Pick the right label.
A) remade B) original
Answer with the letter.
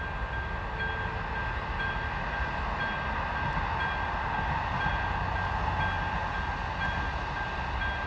B